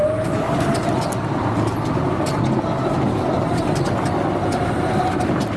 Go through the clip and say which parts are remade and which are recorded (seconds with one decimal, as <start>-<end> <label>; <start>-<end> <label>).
0.0-5.6 recorded